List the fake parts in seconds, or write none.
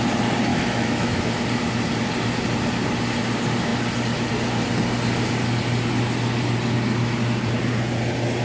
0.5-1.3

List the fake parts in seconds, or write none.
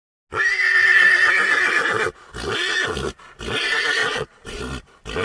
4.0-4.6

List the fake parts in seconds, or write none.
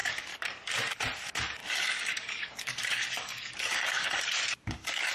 0.0-0.7; 1.6-5.1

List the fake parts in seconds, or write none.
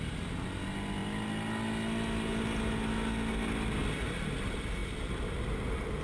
none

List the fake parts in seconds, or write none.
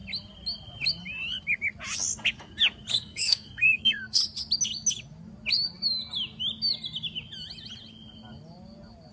2.9-4.2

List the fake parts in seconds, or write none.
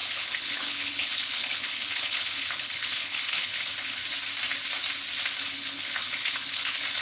0.0-4.0; 5.4-7.0